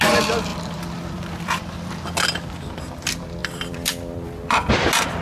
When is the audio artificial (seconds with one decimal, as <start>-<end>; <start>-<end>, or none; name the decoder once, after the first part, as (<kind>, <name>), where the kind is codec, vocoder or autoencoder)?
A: 0.5-1.9 (vocoder, BigVGAN v2); 3.4-4.7